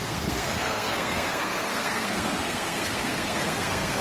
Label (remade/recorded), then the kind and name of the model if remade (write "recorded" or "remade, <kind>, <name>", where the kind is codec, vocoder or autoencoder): remade, codec, SNAC